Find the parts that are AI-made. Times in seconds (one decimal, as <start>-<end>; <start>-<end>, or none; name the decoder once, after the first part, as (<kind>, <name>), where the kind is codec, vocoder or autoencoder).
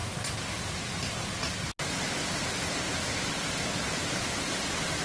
none